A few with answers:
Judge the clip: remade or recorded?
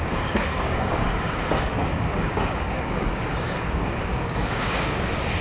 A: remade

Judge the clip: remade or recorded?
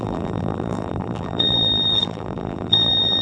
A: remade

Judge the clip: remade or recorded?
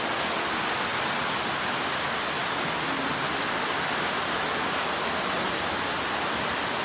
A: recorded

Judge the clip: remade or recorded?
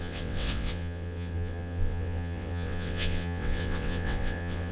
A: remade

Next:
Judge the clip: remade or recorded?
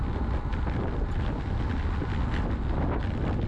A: recorded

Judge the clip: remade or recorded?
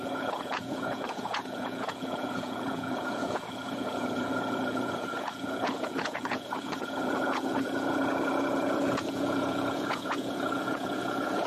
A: remade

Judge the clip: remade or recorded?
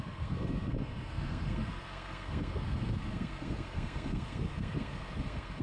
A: remade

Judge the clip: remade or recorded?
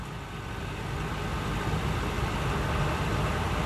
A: recorded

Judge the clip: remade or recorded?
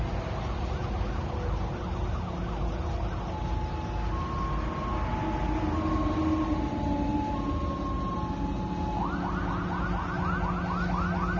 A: recorded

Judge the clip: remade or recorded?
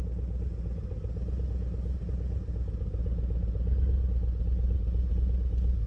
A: recorded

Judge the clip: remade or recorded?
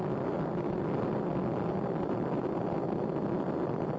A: recorded